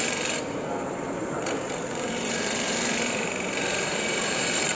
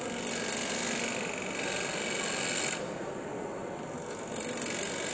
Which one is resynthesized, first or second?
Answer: first